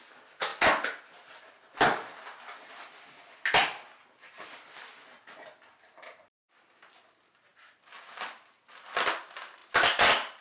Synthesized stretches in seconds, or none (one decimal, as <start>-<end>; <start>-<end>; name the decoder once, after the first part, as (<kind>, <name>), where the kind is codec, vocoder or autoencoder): 7.5-8.6 (vocoder, BigVGAN v2); 9.6-10.4